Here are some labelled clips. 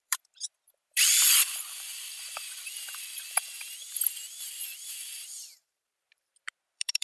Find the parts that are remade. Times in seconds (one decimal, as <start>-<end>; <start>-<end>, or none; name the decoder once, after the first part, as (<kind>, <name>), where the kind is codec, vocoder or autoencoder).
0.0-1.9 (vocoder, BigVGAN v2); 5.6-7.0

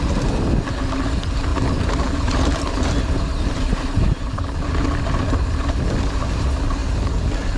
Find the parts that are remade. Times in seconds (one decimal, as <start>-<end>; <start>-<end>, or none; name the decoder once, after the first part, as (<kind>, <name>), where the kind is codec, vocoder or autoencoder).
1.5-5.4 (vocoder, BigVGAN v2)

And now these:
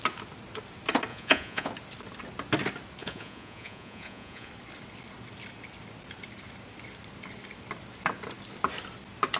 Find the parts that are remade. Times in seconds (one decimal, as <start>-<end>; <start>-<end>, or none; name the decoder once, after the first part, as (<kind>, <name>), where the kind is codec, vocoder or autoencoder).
1.1-1.7 (vocoder, Vocos); 3.0-4.5

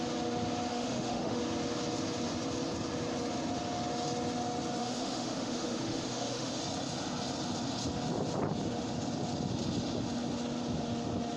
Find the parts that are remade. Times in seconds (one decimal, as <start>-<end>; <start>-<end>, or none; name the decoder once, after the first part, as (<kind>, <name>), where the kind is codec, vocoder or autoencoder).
0.7-1.4 (autoencoder, DAC-VAE); 4.8-6.6